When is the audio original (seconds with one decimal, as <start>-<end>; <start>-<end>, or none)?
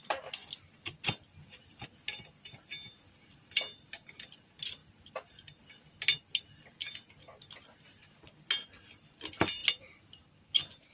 0.0-10.9